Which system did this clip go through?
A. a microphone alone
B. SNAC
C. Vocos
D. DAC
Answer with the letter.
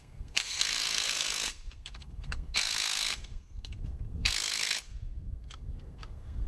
B